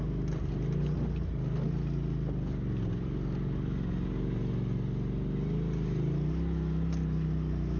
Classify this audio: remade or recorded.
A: recorded